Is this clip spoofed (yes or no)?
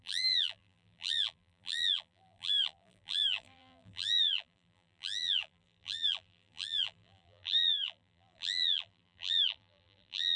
yes